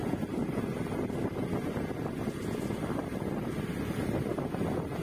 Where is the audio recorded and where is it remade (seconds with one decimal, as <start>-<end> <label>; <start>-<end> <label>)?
0.0-5.0 recorded